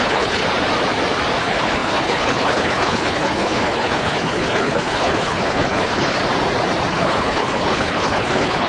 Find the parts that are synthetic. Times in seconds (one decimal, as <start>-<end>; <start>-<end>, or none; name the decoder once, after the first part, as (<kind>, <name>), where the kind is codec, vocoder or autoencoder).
0.0-0.4 (codec, HILCodec); 1.4-6.2; 6.9-8.7